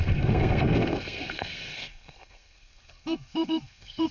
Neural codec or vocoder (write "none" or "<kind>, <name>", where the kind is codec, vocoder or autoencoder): codec, SNAC